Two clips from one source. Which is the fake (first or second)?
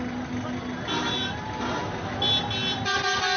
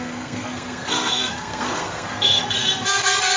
second